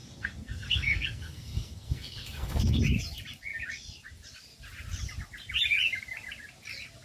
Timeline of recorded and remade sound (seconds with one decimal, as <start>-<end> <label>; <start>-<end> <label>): 0.0-2.8 remade; 2.8-7.0 recorded